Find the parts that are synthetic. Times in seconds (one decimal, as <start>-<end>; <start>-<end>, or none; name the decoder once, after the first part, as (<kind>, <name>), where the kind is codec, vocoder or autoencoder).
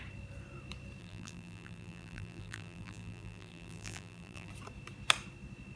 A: 1.0-4.5 (vocoder, BigVGAN v2)